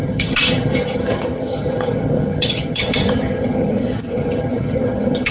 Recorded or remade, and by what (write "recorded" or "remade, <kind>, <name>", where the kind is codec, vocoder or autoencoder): remade, vocoder, HiFi-GAN